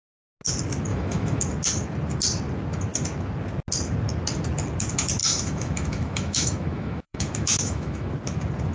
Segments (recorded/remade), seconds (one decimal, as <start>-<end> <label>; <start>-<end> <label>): 0.0-0.9 recorded; 0.9-1.4 remade; 1.4-5.2 recorded; 5.2-8.1 remade; 8.1-8.7 recorded